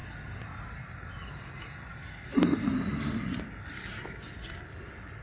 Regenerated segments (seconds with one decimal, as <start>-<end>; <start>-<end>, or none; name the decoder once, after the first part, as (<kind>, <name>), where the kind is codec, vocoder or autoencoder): none